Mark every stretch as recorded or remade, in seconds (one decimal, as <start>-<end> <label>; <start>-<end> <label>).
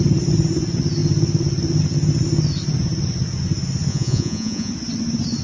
0.0-3.9 recorded; 3.9-4.7 remade; 4.7-5.4 recorded